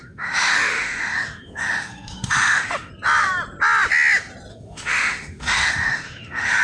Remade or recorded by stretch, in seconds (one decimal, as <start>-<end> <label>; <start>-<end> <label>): 0.0-2.9 remade; 2.9-4.5 recorded; 4.5-6.6 remade